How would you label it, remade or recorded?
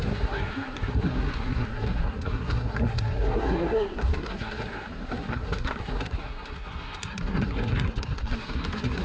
remade